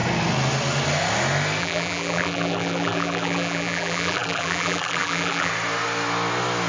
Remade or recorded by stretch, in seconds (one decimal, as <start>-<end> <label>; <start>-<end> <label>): 0.0-1.6 recorded; 1.6-5.5 remade; 5.5-6.7 recorded